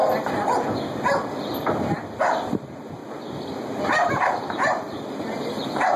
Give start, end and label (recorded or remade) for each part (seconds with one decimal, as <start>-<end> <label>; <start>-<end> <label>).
0.0-2.2 recorded; 2.2-3.0 remade; 3.0-4.1 recorded; 4.1-6.0 remade